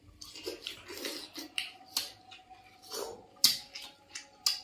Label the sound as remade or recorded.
recorded